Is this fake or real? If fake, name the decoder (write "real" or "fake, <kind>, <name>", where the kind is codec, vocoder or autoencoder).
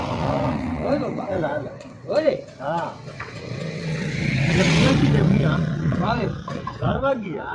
fake, vocoder, WaveNeXt